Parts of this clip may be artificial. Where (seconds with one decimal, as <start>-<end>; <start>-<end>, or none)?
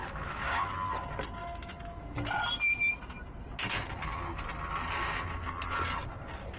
0.0-0.7; 1.4-2.0